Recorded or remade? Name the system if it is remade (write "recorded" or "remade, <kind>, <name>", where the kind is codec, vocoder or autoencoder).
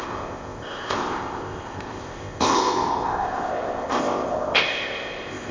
remade, codec, ZipCodec